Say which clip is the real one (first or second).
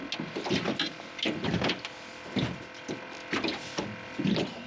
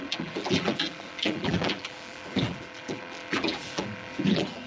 first